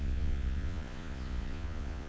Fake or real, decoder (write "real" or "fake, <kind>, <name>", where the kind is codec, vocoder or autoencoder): fake, vocoder, Vocos